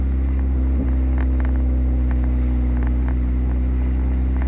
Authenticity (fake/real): real